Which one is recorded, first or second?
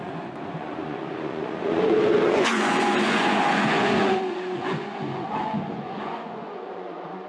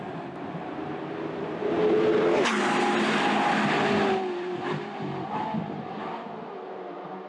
second